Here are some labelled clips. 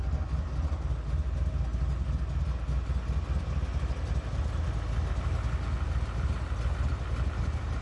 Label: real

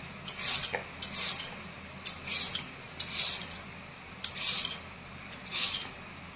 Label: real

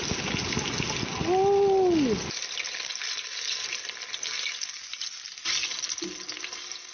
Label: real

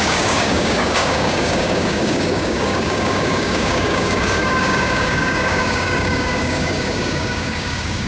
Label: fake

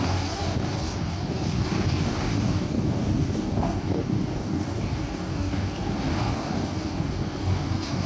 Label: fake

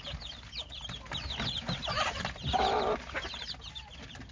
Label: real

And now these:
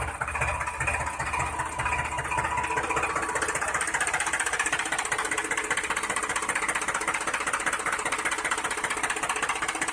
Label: real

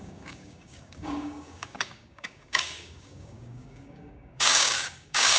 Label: fake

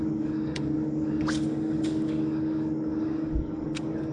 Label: fake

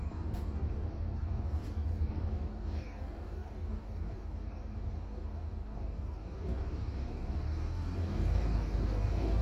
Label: fake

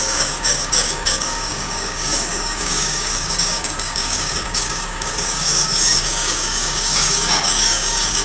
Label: fake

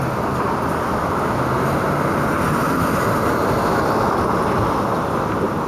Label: real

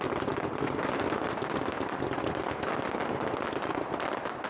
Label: real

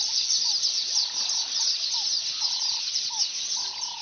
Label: real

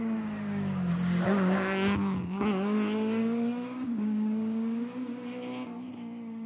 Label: fake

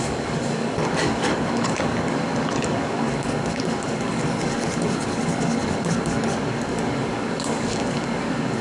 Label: fake